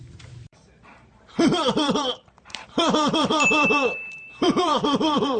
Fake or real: fake